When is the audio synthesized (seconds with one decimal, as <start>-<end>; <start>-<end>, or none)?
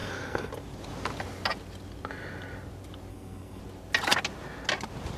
0.0-0.5; 3.1-3.6